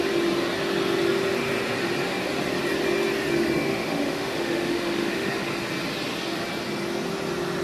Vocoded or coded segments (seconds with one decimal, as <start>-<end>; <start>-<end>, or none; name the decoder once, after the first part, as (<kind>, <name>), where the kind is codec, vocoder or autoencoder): 3.7-5.3 (autoencoder, DAC-VAE)